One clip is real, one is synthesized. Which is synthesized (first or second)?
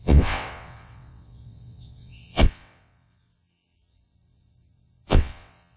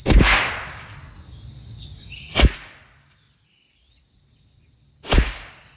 first